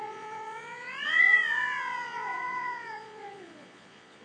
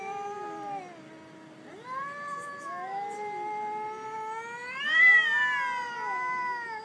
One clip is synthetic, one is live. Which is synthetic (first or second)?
first